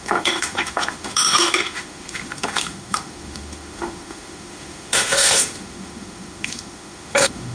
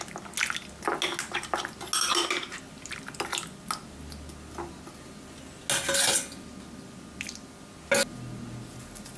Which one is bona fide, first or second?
second